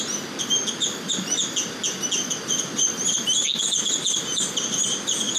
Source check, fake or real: real